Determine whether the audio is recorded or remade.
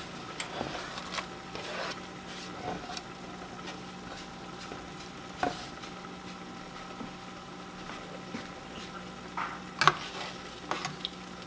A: recorded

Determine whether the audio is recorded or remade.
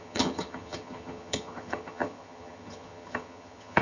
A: remade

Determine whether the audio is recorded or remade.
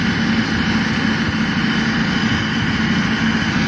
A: recorded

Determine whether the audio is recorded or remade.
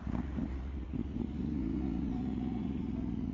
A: remade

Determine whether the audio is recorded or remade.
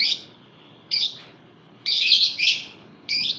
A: remade